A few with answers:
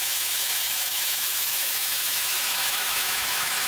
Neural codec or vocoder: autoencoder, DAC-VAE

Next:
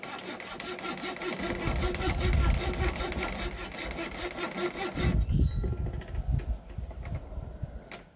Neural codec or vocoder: none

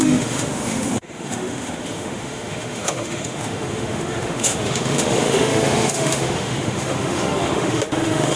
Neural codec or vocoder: autoencoder, DAC-VAE